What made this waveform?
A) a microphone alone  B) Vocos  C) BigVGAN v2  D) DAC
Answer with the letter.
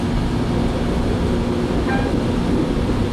A